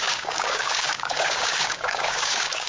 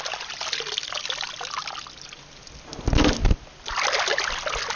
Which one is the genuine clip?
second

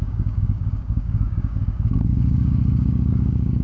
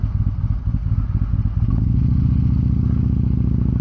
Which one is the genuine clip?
second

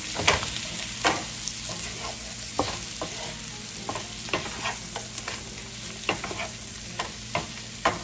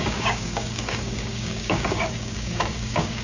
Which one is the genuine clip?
first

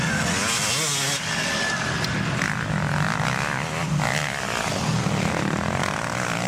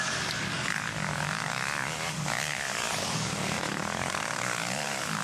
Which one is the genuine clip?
first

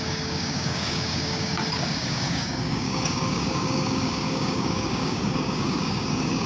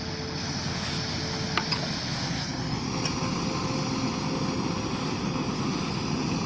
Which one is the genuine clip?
second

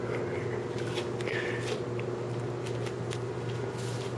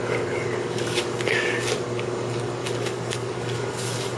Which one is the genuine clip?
first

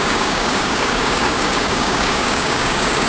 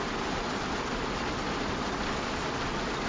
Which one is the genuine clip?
second